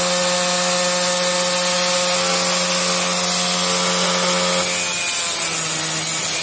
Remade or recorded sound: recorded